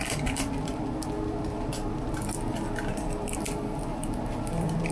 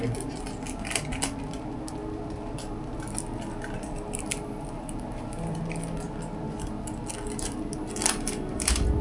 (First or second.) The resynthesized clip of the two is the first